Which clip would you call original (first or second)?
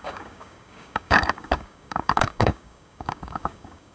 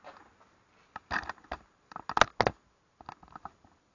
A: second